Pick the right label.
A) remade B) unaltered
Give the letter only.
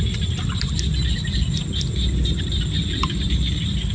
B